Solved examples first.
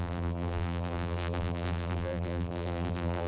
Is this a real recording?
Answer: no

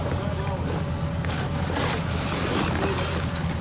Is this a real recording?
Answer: yes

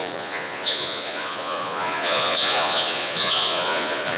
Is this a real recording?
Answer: no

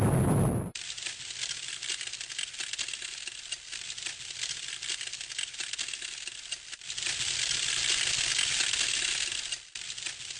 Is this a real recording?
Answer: yes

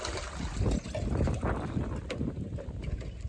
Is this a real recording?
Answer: yes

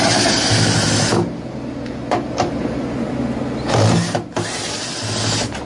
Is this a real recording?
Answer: yes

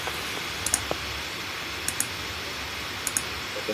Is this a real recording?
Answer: yes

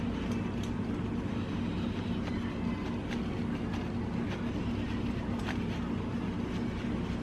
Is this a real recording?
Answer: yes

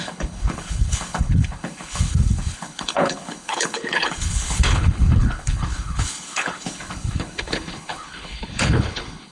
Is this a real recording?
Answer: no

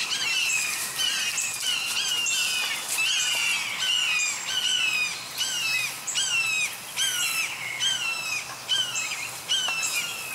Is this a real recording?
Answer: yes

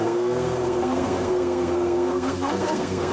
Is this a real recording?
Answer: no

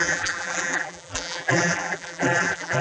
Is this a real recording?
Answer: no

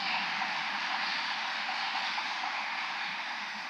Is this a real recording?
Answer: no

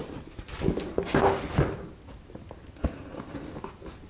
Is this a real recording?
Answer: yes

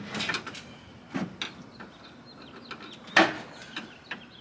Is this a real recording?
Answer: yes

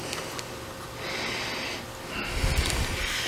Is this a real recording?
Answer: yes